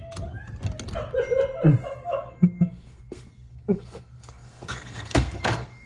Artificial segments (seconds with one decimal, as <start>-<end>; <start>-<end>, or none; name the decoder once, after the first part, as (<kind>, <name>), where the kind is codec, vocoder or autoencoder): 1.8-5.9 (codec, SNAC)